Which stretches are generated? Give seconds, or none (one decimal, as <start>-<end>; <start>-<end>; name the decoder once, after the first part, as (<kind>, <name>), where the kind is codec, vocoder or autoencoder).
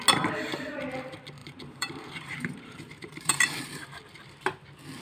1.4-4.0 (vocoder, BigVGAN v2)